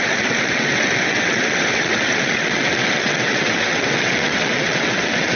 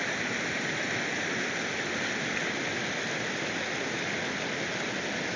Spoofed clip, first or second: first